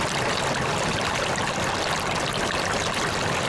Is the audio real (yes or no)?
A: yes